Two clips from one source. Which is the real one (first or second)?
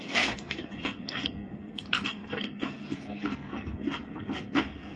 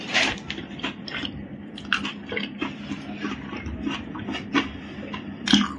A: second